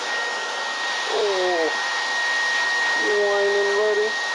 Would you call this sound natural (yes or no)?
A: yes